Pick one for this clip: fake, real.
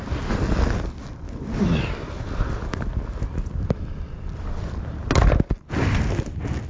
real